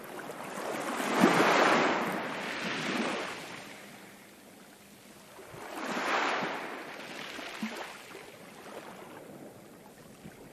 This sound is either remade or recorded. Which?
recorded